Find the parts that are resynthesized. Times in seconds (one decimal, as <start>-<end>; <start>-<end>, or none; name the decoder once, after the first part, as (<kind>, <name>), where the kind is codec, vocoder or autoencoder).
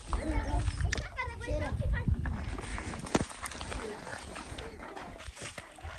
2.7-3.3 (vocoder, Vocos); 4.1-5.5